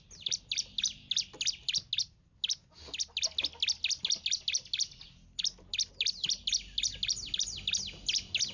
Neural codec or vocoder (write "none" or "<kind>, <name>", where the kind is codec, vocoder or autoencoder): none